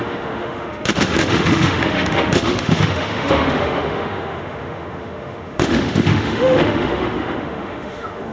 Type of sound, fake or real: fake